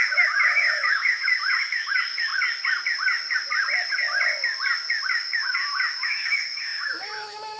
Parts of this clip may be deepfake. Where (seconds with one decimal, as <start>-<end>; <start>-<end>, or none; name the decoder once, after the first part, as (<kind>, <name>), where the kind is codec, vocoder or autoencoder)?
0.0-2.3 (autoencoder, DAC-VAE); 5.1-7.6